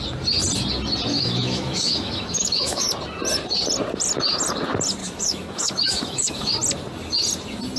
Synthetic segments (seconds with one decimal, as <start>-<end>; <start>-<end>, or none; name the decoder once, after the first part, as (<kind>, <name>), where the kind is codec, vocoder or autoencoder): 1.1-2.9 (autoencoder, DAC-VAE); 5.0-6.5